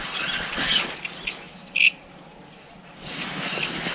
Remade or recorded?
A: recorded